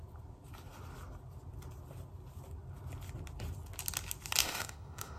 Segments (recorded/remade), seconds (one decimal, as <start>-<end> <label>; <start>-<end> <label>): 0.0-4.4 recorded; 4.4-5.2 remade